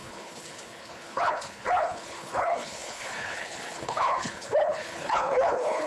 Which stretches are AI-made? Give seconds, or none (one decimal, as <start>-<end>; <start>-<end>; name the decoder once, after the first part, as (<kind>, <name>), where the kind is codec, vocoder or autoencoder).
0.0-5.9 (codec, HILCodec)